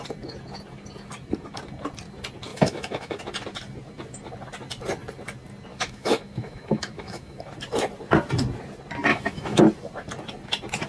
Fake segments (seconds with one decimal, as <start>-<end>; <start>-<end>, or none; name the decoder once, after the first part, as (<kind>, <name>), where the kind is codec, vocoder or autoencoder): 2.5-3.2 (autoencoder, DAC-VAE); 5.7-7.4; 9.1-9.6